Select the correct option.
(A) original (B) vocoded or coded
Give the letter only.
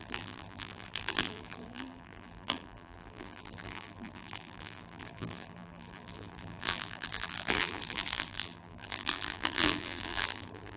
B